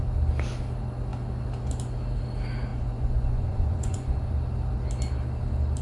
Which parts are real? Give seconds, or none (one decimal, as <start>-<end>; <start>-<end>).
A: 0.0-2.7; 4.3-5.8